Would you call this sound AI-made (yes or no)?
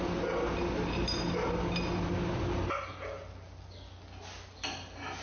no